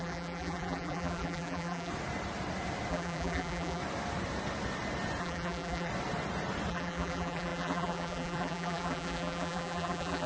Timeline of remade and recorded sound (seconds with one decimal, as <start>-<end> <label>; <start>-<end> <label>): 0.0-1.9 remade; 1.9-2.9 recorded; 2.9-3.8 remade; 3.8-5.2 recorded; 5.2-5.9 remade; 5.9-6.7 recorded; 6.7-10.3 remade